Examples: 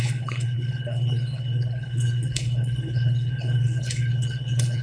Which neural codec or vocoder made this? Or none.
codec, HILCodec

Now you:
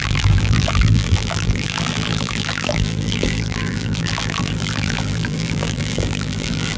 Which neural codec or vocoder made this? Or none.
vocoder, BigVGAN v2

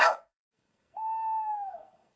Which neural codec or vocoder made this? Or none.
codec, SNAC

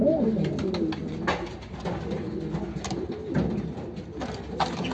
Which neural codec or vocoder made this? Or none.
none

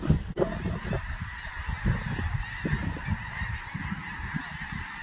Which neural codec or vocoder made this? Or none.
none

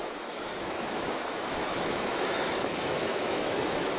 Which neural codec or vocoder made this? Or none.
autoencoder, DAC-VAE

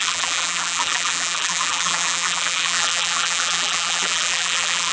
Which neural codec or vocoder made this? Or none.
vocoder, BigVGAN v2